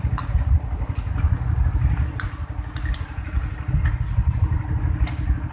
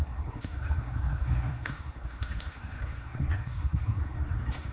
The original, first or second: first